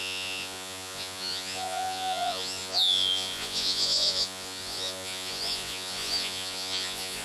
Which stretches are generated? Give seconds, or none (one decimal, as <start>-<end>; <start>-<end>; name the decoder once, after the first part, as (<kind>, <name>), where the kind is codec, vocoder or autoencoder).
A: 0.0-7.2 (vocoder, Vocos)